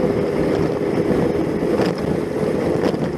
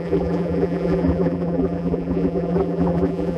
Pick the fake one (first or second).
second